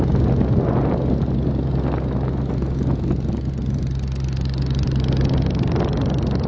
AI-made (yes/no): no